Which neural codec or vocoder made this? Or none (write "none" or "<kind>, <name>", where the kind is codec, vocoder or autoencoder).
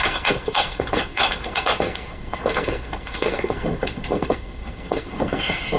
codec, SNAC